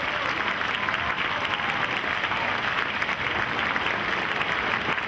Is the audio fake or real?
real